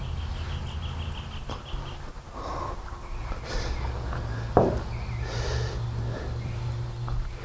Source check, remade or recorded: recorded